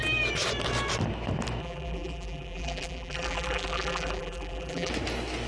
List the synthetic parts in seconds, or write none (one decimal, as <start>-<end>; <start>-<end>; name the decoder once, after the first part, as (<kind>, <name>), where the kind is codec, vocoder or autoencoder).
1.6-4.9 (vocoder, BigVGAN v2)